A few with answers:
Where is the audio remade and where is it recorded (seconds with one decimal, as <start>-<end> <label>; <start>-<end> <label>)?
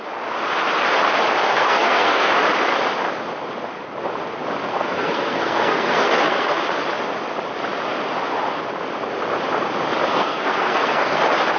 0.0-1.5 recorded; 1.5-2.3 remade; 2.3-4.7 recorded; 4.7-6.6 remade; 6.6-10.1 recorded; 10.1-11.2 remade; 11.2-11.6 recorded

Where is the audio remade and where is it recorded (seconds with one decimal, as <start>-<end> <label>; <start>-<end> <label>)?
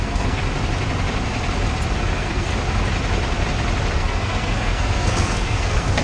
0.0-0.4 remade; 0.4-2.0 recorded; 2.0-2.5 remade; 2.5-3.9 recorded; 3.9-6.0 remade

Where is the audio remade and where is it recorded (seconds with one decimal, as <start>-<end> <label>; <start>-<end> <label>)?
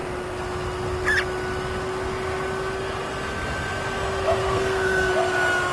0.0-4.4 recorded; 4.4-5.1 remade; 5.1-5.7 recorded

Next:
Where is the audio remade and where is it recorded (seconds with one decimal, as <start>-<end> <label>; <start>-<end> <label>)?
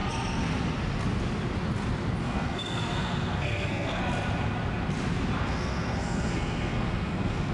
0.0-2.2 recorded; 2.2-4.0 remade; 4.0-5.4 recorded; 5.4-7.5 remade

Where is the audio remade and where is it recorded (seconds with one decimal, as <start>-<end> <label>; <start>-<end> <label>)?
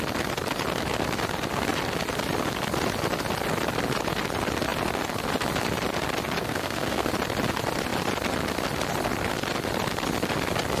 0.0-6.4 recorded; 6.4-7.1 remade; 7.1-10.8 recorded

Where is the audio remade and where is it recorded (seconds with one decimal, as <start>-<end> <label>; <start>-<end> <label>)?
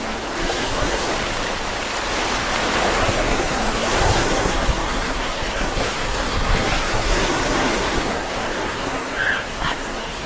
0.0-1.1 remade; 1.1-3.0 recorded; 3.0-10.3 remade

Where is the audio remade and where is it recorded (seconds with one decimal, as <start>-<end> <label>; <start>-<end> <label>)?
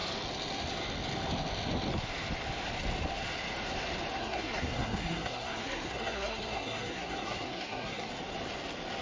0.0-4.2 recorded; 4.2-8.1 remade; 8.1-9.0 recorded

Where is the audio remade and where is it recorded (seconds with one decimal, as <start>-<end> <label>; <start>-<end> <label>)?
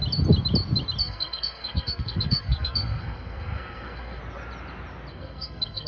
0.0-1.0 recorded; 1.0-4.2 remade; 4.2-5.1 recorded; 5.1-5.9 remade